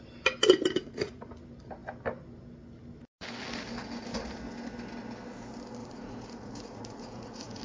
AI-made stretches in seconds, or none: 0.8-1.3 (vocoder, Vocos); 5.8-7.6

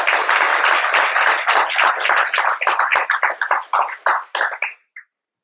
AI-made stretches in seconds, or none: none

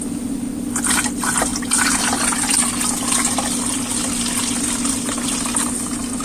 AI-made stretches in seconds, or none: none

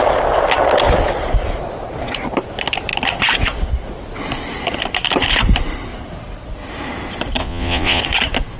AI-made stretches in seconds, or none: 7.4-8.0 (vocoder, Vocos)

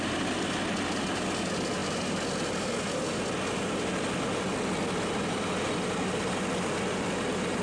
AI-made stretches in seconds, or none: none

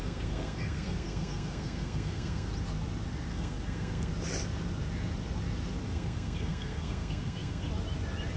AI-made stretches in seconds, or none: 0.0-2.5 (codec, SNAC); 3.3-4.1; 5.9-7.7